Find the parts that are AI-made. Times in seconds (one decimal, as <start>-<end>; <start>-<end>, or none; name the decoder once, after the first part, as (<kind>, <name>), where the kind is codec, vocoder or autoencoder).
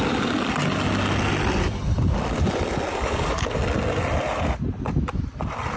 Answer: 2.9-3.6 (codec, DAC)